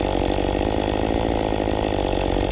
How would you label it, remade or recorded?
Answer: recorded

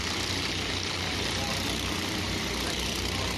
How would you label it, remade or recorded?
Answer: recorded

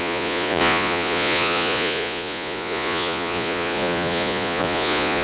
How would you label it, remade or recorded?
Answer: remade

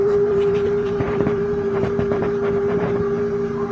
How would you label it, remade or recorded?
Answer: remade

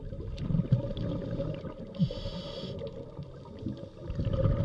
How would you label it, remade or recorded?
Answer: recorded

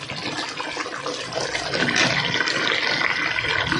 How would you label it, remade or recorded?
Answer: recorded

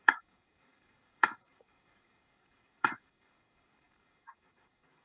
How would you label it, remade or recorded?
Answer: remade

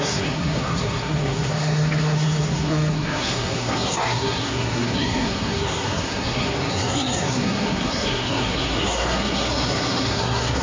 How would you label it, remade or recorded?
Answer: remade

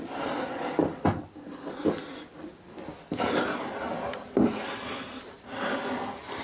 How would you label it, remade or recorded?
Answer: recorded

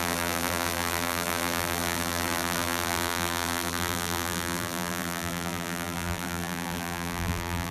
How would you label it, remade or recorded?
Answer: remade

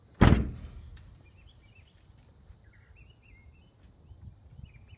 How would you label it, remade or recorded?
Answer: recorded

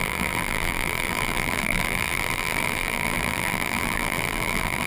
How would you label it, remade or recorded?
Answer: remade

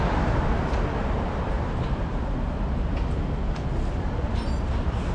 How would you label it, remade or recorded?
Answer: recorded